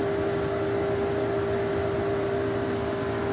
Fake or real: real